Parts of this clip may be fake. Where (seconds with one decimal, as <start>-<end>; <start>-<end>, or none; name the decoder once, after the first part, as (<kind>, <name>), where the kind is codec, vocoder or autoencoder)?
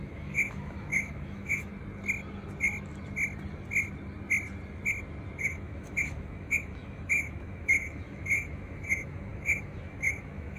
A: 0.0-1.7 (autoencoder, DAC-VAE); 5.4-10.6